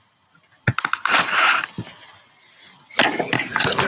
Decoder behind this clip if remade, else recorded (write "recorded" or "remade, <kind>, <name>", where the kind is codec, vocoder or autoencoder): recorded